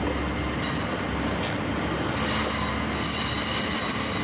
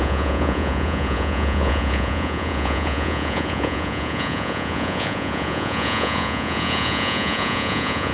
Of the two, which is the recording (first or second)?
first